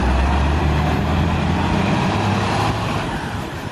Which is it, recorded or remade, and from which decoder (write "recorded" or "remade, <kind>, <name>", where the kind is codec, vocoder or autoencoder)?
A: remade, vocoder, BigVGAN v2